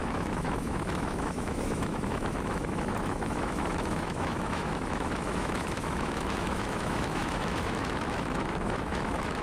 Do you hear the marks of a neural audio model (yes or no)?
yes